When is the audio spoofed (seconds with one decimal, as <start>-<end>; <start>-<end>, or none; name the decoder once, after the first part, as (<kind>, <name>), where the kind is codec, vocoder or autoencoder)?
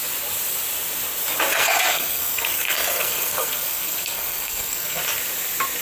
1.5-5.0 (codec, SNAC)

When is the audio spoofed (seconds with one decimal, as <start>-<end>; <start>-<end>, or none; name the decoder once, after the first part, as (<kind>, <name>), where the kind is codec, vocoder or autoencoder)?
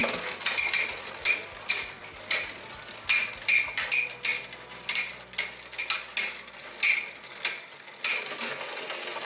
none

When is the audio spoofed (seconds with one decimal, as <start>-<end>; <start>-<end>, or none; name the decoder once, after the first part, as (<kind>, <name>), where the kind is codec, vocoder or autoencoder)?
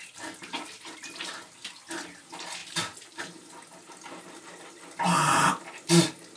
none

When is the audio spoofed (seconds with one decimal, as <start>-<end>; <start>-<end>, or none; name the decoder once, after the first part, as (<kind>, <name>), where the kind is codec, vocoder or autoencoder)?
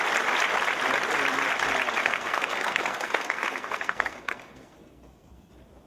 2.0-5.5 (codec, SNAC)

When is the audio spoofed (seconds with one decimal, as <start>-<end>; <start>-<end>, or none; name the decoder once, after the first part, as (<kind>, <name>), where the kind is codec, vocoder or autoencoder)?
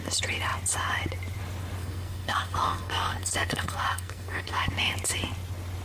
1.8-4.7 (codec, SNAC)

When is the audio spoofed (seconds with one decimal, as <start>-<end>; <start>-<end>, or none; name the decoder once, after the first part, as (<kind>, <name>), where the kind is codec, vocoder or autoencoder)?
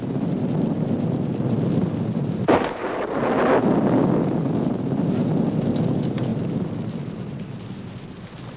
none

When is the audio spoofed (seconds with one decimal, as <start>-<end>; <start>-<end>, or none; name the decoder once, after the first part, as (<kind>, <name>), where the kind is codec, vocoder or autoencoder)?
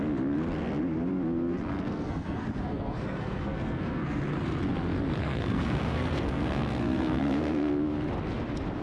1.7-4.2 (codec, SNAC); 5.2-7.7